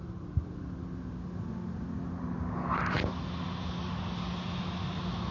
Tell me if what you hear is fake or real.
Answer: real